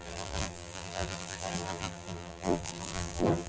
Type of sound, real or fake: fake